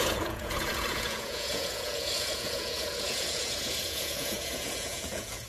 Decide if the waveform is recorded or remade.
remade